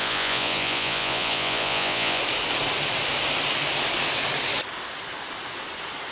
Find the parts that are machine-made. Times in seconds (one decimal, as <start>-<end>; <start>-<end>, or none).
0.0-2.2